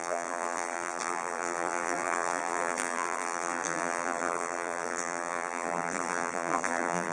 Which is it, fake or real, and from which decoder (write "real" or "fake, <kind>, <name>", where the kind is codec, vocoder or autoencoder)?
fake, vocoder, BigVGAN v2